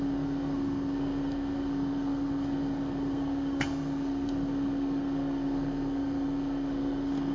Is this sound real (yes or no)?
no